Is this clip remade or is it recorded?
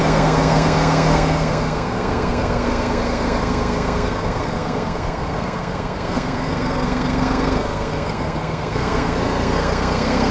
remade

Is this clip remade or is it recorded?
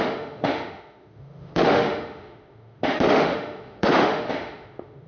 remade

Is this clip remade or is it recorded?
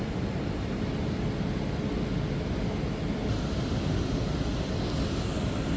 recorded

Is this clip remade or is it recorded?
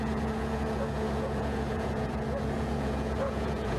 remade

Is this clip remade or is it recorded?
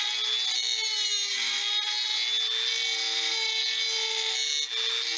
recorded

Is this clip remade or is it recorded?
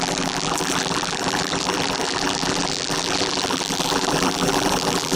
remade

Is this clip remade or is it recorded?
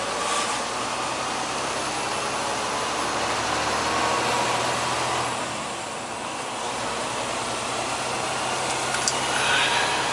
recorded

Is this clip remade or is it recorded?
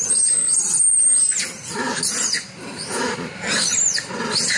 recorded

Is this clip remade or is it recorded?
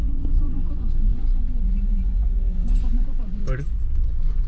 remade